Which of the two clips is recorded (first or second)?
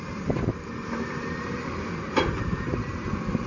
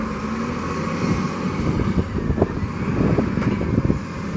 second